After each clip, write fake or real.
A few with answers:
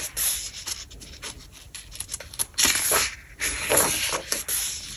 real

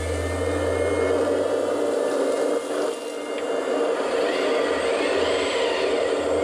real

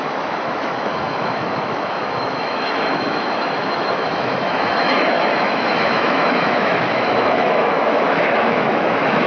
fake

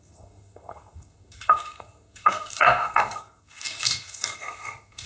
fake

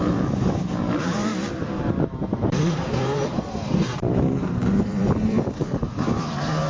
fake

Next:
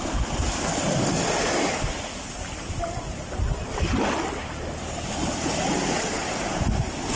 real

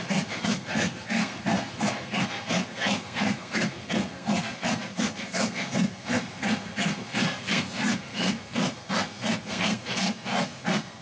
fake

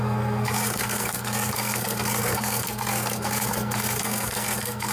fake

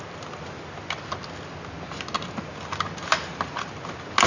real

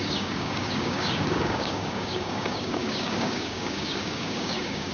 fake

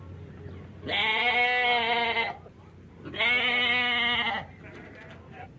real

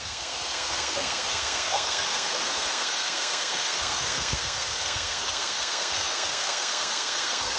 fake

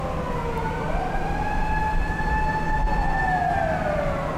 real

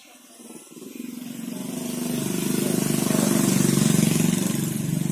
real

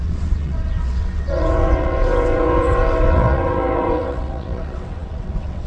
fake